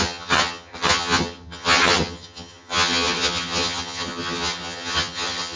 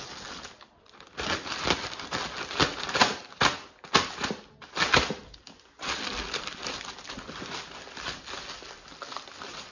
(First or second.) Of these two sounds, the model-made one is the first